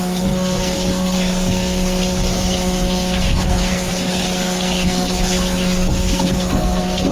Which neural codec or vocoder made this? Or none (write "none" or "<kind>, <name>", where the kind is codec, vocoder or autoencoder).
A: codec, SNAC